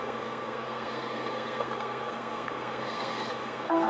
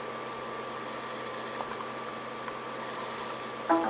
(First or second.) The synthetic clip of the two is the first